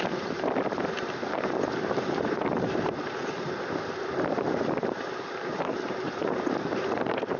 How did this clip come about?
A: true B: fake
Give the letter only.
B